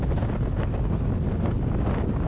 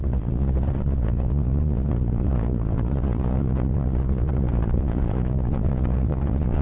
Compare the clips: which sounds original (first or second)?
first